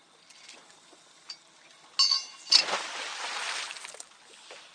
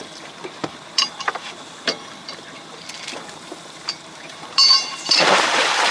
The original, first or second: first